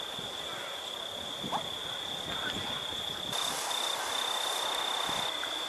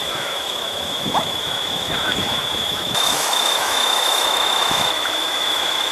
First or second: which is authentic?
first